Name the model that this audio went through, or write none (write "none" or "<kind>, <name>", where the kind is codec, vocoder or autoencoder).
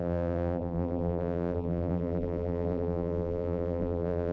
vocoder, BigVGAN v2